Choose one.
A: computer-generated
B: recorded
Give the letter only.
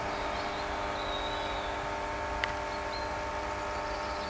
B